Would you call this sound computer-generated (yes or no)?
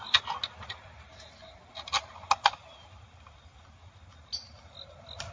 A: no